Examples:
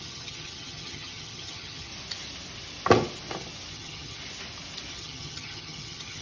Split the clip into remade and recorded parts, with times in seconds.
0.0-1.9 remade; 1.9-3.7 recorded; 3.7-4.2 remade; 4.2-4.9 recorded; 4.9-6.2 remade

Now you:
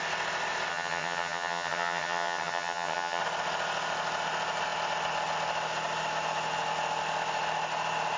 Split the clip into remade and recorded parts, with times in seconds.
0.0-0.7 recorded; 0.7-3.2 remade; 3.2-8.2 recorded

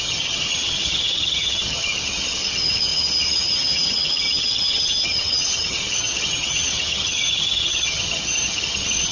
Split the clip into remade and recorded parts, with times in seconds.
0.0-9.1 remade

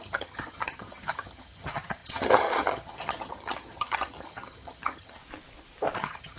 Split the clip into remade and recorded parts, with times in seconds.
0.0-5.2 remade; 5.2-6.0 recorded; 6.0-6.4 remade

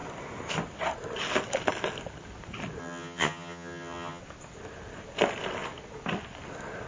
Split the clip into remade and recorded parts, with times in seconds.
0.0-2.8 recorded; 2.8-4.2 remade; 4.2-6.9 recorded